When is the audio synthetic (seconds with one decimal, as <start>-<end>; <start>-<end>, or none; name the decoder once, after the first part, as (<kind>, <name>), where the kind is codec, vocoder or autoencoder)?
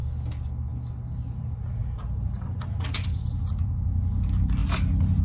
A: 1.8-3.7 (vocoder, BigVGAN v2)